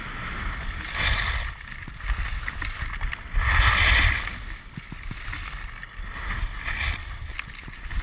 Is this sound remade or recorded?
recorded